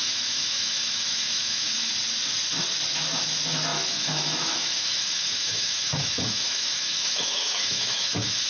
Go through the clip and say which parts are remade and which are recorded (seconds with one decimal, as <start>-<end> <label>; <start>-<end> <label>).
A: 0.0-1.9 remade; 1.9-3.7 recorded; 3.7-8.5 remade